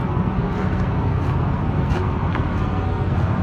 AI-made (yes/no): yes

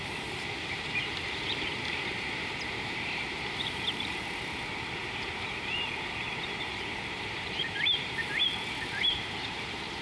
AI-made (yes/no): yes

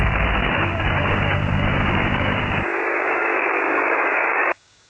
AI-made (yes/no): yes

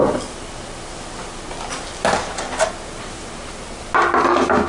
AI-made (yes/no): no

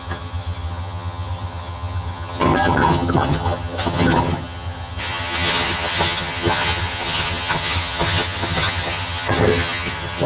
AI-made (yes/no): yes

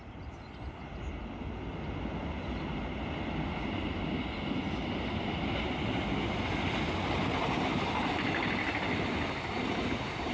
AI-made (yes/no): no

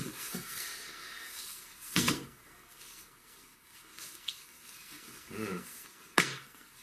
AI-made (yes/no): yes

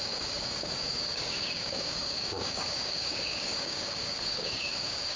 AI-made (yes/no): yes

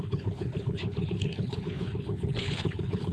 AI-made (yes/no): yes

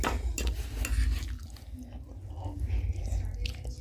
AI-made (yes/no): no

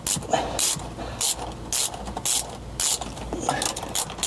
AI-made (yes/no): no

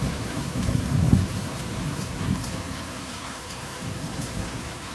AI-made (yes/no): yes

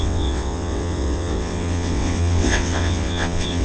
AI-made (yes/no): yes